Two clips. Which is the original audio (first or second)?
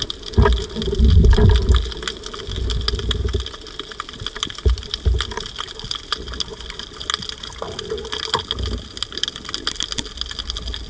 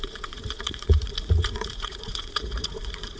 first